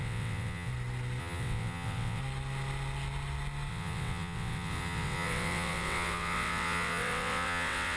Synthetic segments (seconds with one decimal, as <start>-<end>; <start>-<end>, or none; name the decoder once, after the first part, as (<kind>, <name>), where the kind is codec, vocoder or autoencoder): 0.0-0.7 (vocoder, WaveNeXt); 1.2-2.2; 3.7-8.0